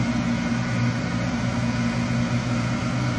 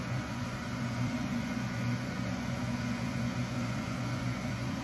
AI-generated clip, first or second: second